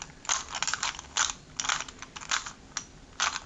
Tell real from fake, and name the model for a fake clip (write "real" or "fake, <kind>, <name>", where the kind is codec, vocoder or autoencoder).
real